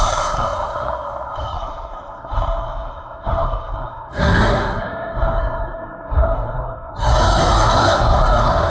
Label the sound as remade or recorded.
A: remade